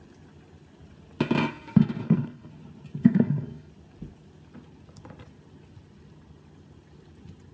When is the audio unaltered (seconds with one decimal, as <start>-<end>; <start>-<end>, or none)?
0.0-1.5; 2.5-3.0; 3.7-7.5